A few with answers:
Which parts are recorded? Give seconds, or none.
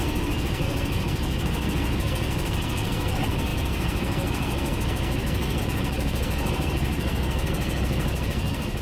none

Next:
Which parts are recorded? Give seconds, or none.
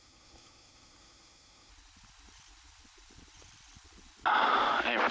1.7-5.1